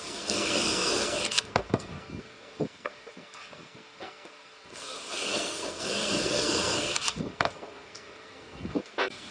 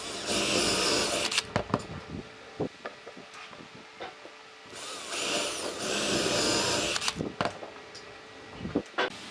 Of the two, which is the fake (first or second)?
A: first